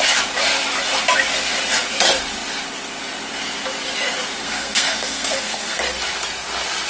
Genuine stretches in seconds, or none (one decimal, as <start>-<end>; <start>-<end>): 0.0-4.4; 5.8-6.9